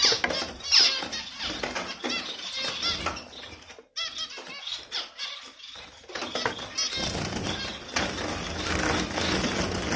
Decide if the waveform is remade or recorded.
recorded